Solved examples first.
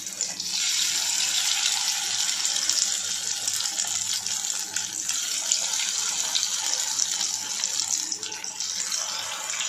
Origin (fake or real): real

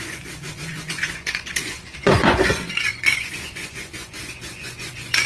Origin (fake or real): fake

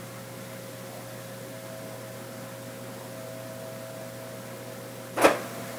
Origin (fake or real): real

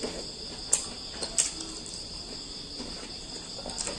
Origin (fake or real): real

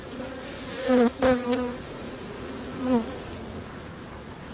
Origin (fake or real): fake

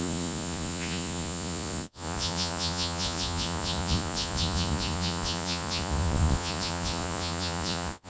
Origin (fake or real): fake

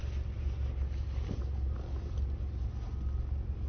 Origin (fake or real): real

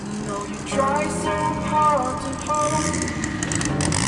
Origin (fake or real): real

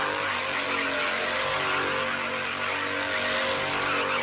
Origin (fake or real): real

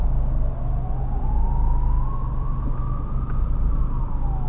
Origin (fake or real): real